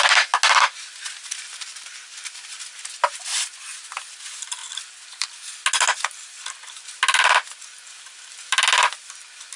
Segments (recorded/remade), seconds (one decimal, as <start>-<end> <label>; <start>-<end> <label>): 0.0-9.6 recorded